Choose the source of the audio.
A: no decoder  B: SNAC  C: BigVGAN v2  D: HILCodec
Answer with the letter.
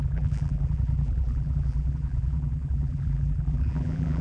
C